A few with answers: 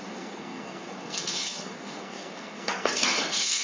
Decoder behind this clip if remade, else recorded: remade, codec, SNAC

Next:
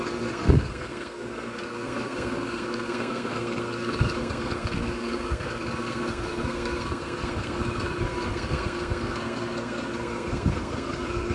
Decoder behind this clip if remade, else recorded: remade, codec, SNAC